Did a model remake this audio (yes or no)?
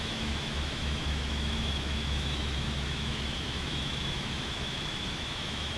yes